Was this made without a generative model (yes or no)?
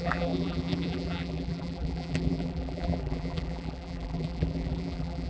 no